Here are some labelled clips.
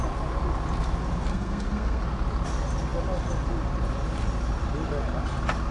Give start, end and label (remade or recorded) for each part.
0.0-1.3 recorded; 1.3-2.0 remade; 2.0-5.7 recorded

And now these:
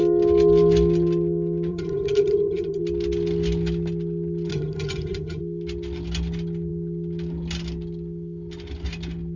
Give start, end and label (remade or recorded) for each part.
0.0-1.7 recorded; 1.7-2.8 remade; 2.8-4.5 recorded; 4.5-5.4 remade; 5.4-9.4 recorded